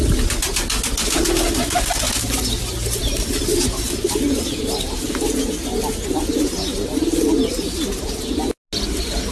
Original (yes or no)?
yes